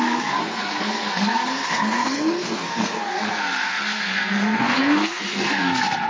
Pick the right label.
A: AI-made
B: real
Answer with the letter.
A